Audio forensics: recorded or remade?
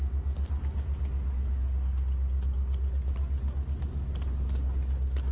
recorded